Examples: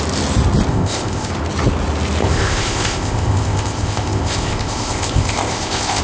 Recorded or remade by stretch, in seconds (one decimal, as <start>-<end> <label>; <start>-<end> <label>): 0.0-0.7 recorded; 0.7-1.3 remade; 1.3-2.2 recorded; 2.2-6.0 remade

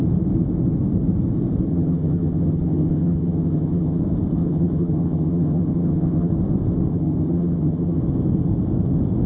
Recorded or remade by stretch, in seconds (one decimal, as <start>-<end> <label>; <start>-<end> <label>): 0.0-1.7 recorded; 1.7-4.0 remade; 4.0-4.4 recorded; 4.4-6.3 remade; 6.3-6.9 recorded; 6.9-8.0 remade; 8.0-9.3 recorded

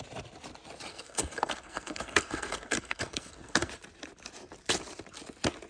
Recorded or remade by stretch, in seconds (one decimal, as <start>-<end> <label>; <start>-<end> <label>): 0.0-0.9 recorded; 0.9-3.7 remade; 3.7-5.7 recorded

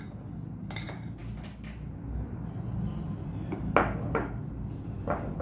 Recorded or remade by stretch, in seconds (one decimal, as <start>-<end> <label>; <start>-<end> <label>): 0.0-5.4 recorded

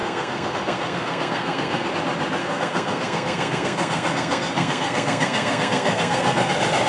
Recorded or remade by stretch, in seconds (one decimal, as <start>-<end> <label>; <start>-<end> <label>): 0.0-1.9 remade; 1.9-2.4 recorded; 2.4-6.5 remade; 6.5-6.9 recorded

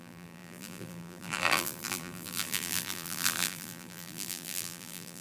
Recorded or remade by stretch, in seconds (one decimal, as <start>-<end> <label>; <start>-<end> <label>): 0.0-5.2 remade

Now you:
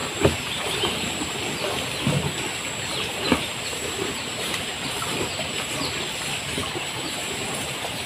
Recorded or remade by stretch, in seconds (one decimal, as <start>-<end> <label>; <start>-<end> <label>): 0.0-0.8 remade; 0.8-2.9 recorded; 2.9-4.7 remade; 4.7-6.6 recorded; 6.6-8.1 remade

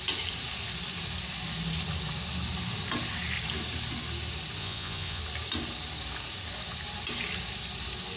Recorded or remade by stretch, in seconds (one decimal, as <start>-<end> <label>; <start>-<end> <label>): 0.0-4.6 recorded; 4.6-5.2 remade; 5.2-8.2 recorded